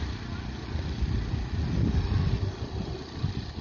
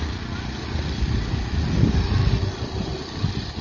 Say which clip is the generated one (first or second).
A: first